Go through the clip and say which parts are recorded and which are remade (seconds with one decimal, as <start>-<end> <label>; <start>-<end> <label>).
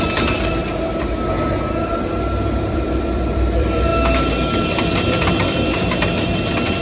0.0-0.6 remade; 0.6-2.6 recorded; 2.6-3.9 remade; 3.9-4.6 recorded; 4.6-6.8 remade